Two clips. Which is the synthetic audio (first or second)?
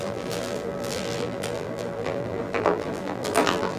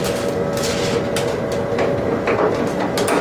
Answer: first